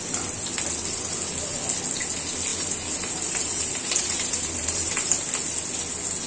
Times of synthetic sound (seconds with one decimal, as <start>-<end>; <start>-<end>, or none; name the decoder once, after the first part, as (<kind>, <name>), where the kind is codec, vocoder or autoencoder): 2.5-4.9 (vocoder, BigVGAN v2)

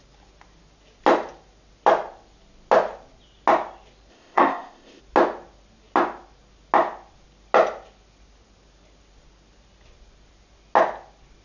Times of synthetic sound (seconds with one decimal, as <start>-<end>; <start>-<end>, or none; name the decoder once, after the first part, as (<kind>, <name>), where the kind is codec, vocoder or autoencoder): 4.1-5.0 (codec, ZipCodec)